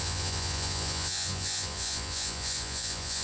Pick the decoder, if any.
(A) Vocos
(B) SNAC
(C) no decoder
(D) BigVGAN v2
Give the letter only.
A